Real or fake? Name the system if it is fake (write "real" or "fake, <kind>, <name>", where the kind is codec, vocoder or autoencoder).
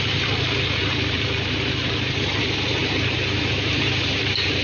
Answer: fake, vocoder, BigVGAN v2